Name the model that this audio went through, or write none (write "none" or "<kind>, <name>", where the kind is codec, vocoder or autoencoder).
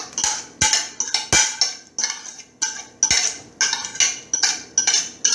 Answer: none